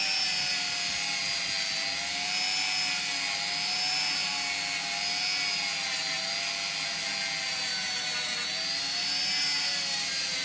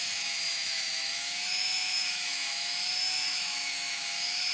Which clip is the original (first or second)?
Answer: first